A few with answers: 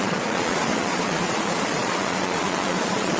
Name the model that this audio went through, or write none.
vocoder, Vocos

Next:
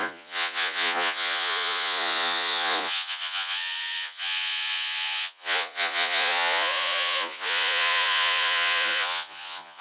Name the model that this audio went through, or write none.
vocoder, Vocos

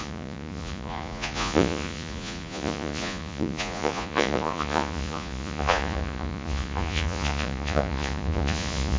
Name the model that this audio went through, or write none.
vocoder, Vocos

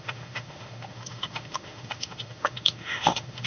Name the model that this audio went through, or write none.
autoencoder, DAC-VAE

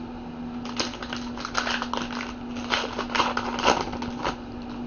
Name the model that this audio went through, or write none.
none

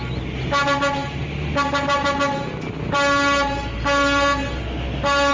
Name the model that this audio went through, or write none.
none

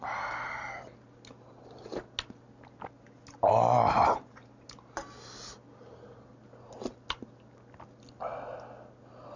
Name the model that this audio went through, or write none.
none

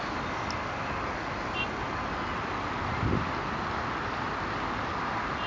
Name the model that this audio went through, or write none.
none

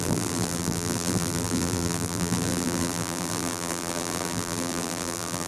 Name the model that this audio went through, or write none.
vocoder, BigVGAN v2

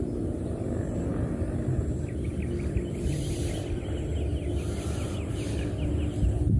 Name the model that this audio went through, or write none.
none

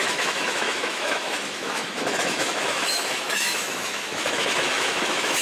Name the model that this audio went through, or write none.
autoencoder, DAC-VAE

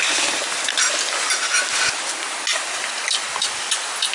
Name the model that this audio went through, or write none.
none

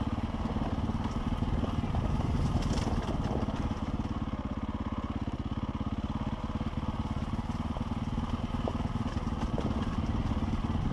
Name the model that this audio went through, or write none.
none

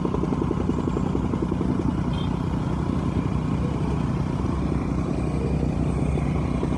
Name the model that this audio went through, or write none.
none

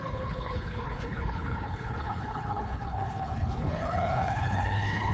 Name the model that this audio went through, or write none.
codec, HILCodec